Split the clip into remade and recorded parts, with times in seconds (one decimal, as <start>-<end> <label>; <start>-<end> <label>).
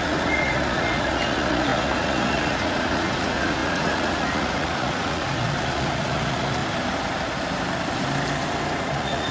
0.0-6.6 remade; 6.6-8.8 recorded; 8.8-9.3 remade